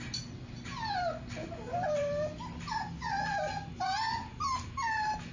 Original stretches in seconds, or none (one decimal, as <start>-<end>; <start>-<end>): 0.0-5.3